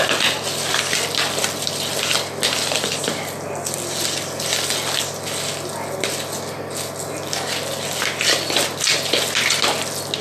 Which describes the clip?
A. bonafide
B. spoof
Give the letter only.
A